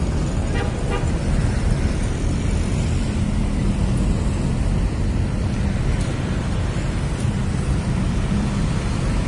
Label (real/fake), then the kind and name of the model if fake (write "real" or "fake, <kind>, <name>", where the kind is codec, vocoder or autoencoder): real